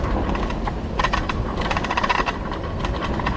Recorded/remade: recorded